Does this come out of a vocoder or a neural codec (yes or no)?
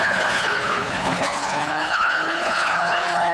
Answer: yes